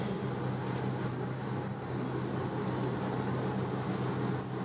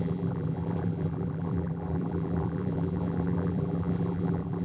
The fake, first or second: second